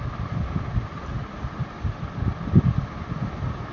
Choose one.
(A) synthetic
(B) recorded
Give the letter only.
B